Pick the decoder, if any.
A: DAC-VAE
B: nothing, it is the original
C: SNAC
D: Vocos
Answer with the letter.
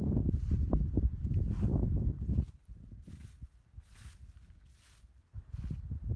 B